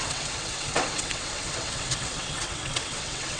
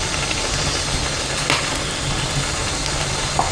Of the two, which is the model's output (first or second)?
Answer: first